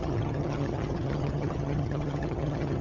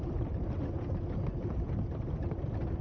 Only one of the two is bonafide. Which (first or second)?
second